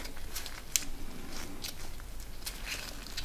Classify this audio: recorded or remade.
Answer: recorded